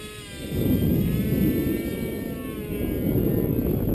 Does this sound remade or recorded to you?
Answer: recorded